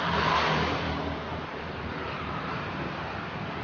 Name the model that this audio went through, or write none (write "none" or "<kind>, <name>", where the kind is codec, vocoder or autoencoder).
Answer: vocoder, BigVGAN v2